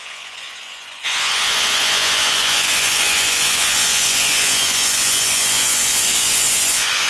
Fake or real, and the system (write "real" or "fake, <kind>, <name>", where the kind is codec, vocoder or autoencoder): fake, vocoder, Vocos